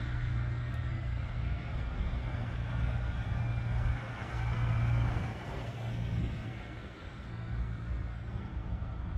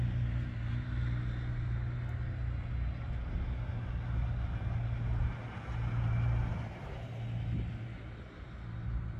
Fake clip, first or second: first